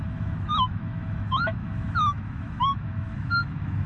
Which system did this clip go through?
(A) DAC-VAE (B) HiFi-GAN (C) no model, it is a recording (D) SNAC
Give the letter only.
A